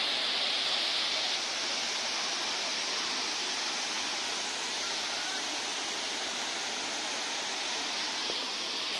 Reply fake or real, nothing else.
real